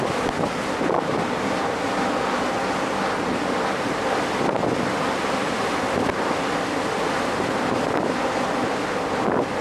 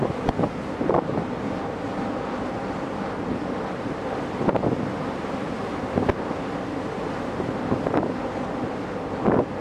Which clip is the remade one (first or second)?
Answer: second